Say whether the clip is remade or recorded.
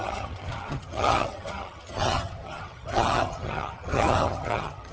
remade